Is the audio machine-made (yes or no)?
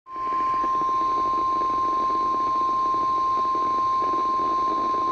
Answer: no